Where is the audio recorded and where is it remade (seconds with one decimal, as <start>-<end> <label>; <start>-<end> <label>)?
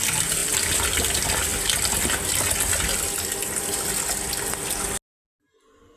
0.0-6.0 recorded